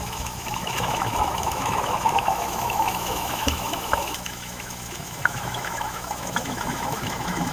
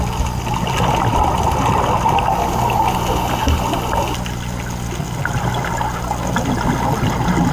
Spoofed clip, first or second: first